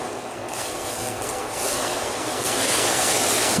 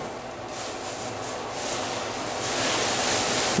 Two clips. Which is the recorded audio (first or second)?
second